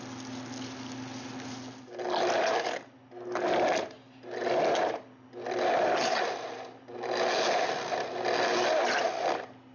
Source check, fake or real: real